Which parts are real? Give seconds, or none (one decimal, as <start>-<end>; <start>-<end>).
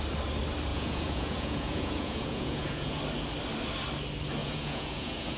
0.0-0.7; 3.0-4.4